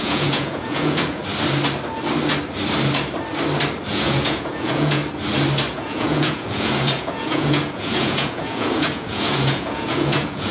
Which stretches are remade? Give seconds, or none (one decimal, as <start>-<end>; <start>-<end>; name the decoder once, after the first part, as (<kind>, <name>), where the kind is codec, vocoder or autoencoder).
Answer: 0.0-1.2 (vocoder, Vocos); 3.9-5.0; 5.7-10.5